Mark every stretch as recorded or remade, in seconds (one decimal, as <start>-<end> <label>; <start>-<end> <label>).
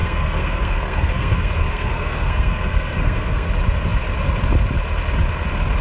0.0-3.5 remade; 3.5-5.8 recorded